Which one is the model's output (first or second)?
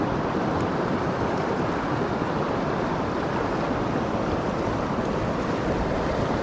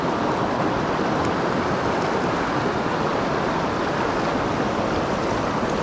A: first